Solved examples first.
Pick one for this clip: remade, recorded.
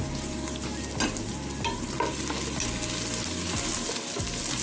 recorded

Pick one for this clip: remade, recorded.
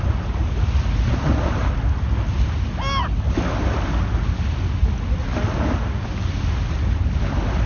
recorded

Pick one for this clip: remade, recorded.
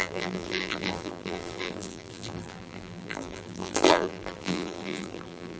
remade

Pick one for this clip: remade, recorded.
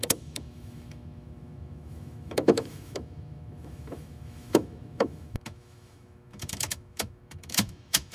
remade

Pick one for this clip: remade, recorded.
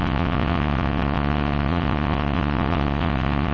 remade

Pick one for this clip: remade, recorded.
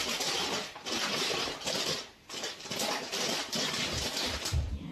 remade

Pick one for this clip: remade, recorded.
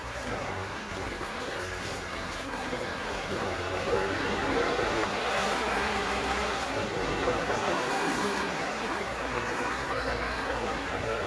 remade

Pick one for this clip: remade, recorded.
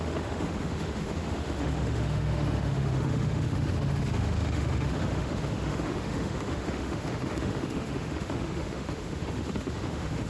remade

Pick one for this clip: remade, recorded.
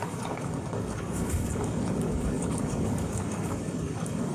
remade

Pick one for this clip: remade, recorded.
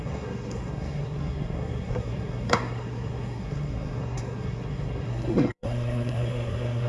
remade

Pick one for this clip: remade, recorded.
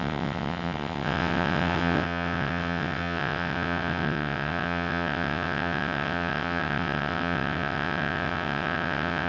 remade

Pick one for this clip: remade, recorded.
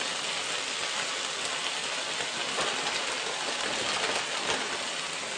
recorded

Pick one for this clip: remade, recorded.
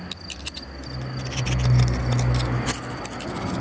recorded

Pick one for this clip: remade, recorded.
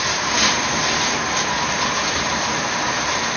remade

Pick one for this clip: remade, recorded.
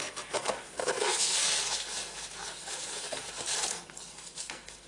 remade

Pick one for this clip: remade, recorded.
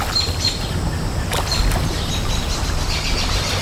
recorded